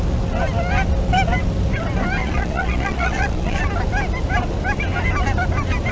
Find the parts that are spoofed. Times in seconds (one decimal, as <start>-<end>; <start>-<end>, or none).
2.2-3.6